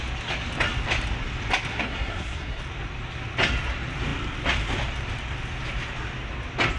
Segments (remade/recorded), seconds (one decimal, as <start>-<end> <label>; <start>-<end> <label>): 0.0-1.7 recorded; 1.7-2.6 remade; 2.6-6.8 recorded